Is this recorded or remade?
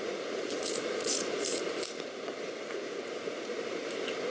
remade